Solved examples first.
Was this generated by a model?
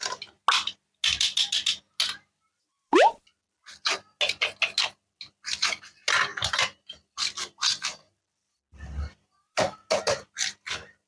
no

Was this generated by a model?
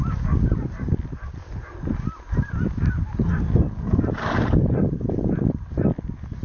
no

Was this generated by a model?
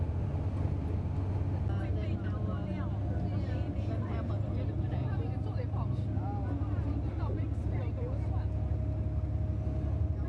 no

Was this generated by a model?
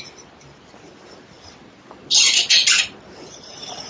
no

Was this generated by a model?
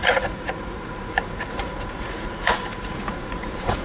yes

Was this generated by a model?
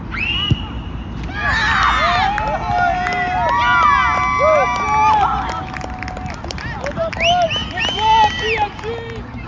no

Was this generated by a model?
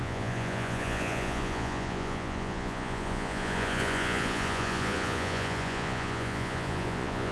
yes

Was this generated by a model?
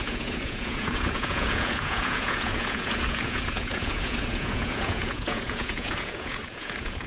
yes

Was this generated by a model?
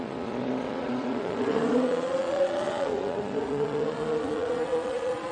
yes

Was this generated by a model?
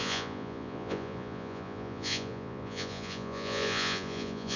yes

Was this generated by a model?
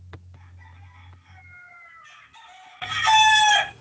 no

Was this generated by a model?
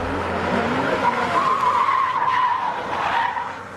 no